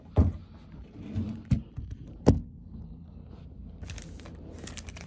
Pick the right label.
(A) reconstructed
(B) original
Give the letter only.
B